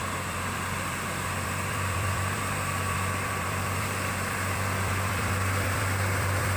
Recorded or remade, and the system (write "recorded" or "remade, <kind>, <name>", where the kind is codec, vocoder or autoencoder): remade, vocoder, BigVGAN v2